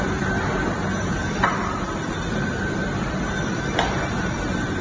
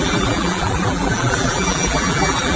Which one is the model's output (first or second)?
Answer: second